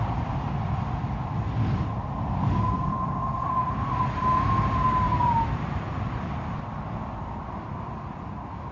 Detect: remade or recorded recorded